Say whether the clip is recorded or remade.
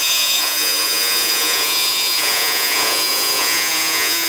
remade